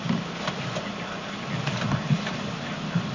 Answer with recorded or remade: recorded